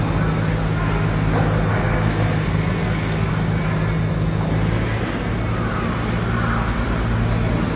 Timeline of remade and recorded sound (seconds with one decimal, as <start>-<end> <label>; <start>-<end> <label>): 0.0-1.7 recorded; 1.7-3.3 remade; 3.3-7.8 recorded